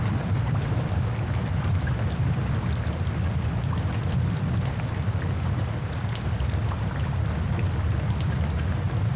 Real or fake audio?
fake